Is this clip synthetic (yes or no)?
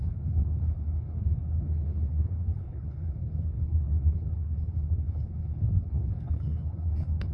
yes